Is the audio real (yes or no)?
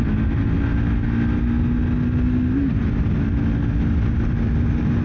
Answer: yes